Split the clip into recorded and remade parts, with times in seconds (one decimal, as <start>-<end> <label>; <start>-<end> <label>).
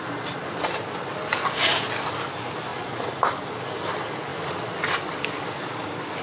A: 0.0-1.4 recorded; 1.4-1.9 remade; 1.9-6.2 recorded